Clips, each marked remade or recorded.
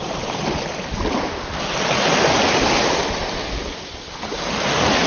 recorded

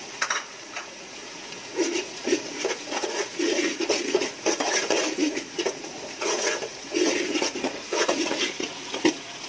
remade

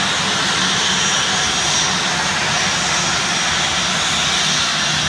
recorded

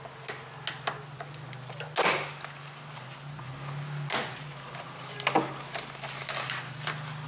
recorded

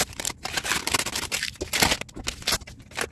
recorded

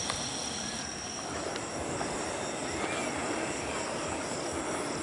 recorded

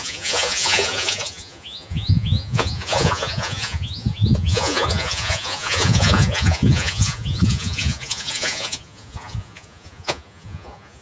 remade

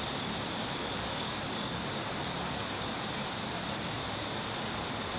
recorded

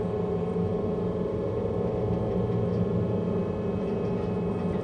recorded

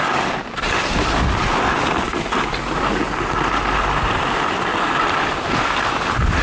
recorded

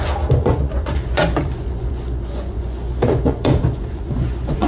remade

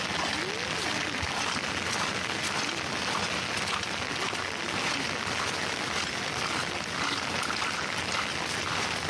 recorded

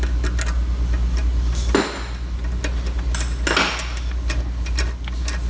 recorded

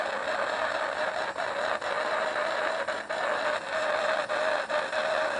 recorded